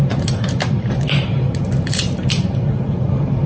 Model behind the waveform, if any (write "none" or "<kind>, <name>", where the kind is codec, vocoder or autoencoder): vocoder, BigVGAN v2